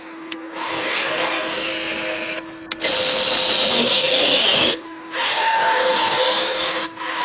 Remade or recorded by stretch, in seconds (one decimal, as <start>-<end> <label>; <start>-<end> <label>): 0.0-1.7 remade; 1.7-3.8 recorded; 3.8-7.2 remade